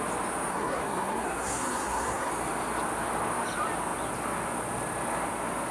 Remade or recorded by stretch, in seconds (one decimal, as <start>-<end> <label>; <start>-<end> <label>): 0.0-0.5 recorded; 0.5-2.3 remade; 2.3-5.7 recorded